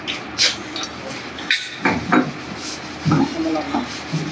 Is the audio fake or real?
real